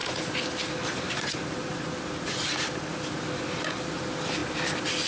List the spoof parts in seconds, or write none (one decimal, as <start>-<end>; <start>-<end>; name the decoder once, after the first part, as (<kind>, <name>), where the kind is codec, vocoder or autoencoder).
0.0-4.4 (vocoder, BigVGAN v2)